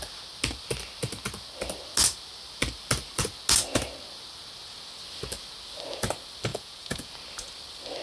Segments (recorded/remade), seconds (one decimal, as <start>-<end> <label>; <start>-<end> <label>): 0.0-6.5 recorded; 6.5-7.1 remade; 7.1-8.0 recorded